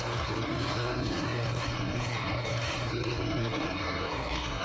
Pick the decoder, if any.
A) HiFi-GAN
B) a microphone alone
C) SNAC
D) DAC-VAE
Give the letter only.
C